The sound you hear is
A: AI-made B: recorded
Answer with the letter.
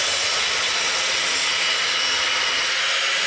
B